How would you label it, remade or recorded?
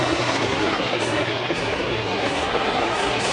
remade